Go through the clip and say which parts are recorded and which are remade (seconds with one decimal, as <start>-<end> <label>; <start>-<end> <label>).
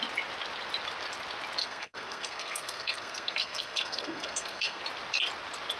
0.0-1.6 recorded; 1.6-4.8 remade; 4.8-5.8 recorded